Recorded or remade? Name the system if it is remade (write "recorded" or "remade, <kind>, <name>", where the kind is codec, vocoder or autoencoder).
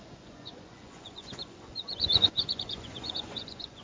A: remade, vocoder, Vocos